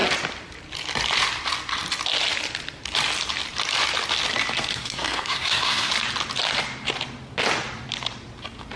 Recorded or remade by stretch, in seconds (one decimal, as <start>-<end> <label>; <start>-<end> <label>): 0.0-4.7 recorded; 4.7-5.9 remade; 5.9-8.8 recorded